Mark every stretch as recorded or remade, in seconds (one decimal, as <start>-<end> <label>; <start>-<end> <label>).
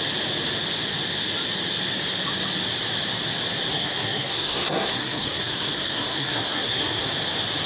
0.0-3.7 recorded; 3.7-7.0 remade; 7.0-7.7 recorded